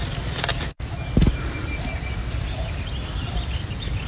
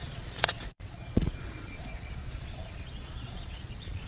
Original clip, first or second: first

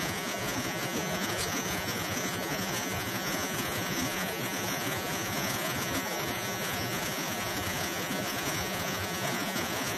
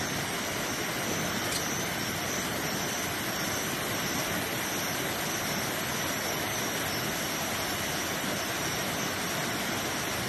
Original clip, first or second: second